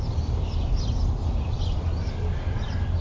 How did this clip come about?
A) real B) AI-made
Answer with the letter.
A